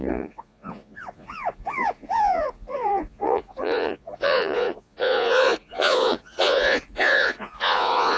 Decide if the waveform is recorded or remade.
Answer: remade